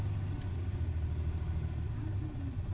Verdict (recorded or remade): recorded